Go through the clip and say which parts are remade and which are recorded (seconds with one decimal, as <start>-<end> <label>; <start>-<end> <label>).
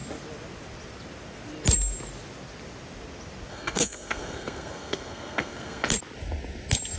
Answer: 0.0-3.5 recorded; 3.5-5.9 remade; 5.9-7.0 recorded